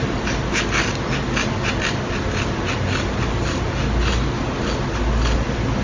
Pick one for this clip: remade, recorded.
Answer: recorded